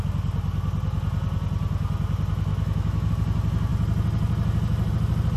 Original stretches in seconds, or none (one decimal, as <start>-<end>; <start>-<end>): 0.0-2.5; 3.1-5.4